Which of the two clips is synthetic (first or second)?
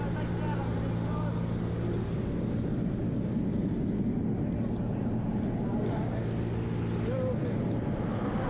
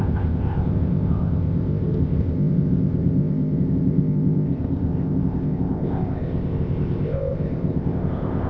second